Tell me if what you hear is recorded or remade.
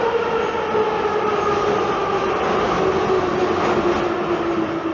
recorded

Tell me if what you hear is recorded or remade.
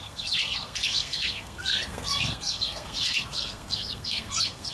remade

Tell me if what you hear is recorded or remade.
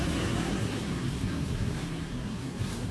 remade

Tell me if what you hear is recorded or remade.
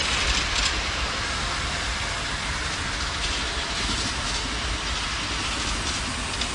recorded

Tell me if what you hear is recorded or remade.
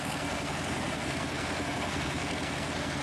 remade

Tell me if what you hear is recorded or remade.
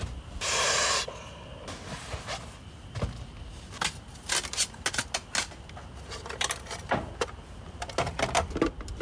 recorded